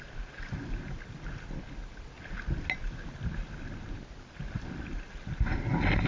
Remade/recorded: recorded